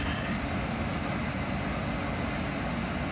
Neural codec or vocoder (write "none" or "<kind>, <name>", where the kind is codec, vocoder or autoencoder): none